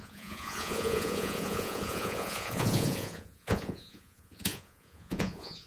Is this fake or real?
fake